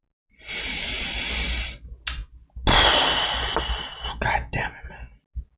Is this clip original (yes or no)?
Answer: yes